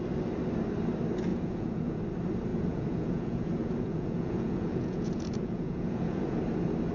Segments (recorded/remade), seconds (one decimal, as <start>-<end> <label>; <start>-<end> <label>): 0.0-1.3 recorded; 1.3-2.0 remade; 2.0-2.5 recorded; 2.5-6.4 remade; 6.4-6.9 recorded